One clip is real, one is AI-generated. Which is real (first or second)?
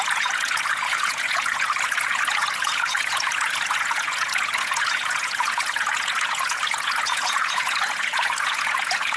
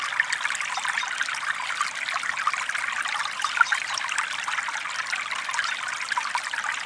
second